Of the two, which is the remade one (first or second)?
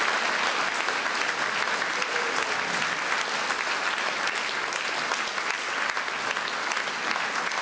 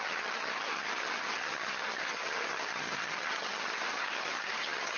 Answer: second